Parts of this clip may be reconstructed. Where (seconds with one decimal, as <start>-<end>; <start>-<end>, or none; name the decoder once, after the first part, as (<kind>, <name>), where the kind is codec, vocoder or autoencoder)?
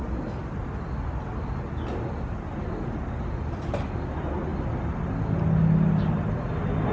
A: none